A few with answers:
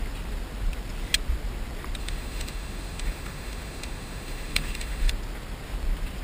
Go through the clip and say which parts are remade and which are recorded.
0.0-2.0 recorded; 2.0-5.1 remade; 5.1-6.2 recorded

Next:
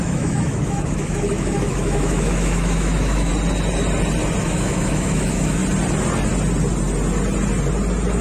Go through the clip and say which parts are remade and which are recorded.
0.0-3.3 remade; 3.3-4.4 recorded; 4.4-5.6 remade; 5.6-8.2 recorded